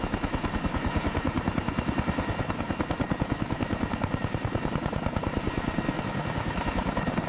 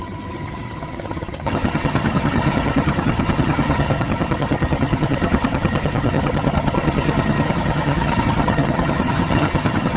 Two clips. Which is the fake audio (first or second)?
second